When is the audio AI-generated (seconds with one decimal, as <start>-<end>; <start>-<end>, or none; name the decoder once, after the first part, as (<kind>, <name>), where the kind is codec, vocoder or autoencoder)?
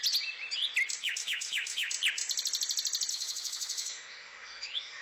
1.0-1.9 (autoencoder, DAC-VAE); 3.1-5.0